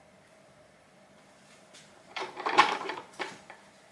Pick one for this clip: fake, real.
fake